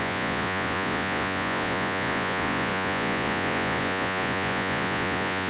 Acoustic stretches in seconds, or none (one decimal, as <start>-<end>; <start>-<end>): none